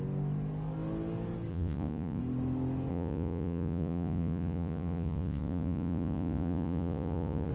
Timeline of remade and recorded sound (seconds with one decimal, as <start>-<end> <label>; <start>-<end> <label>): 0.0-1.5 recorded; 1.5-2.2 remade; 2.2-2.9 recorded; 2.9-7.5 remade